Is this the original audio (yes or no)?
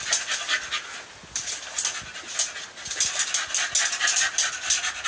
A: yes